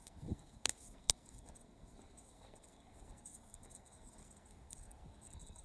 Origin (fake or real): fake